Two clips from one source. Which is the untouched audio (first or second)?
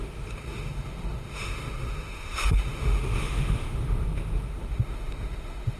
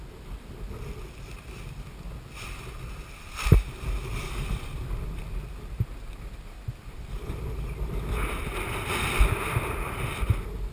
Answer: second